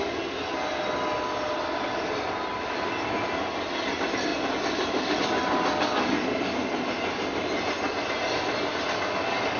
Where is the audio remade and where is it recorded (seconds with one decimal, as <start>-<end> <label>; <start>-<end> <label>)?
0.0-9.6 recorded